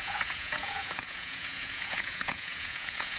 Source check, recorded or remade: remade